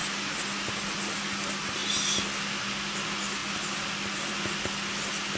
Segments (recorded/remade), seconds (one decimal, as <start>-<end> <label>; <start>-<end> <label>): 0.0-5.4 recorded